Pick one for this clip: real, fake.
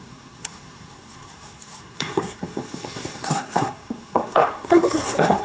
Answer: fake